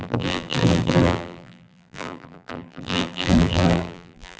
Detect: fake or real fake